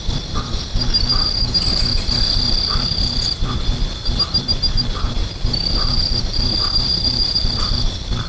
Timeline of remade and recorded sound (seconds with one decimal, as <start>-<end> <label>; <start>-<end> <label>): 0.0-8.3 remade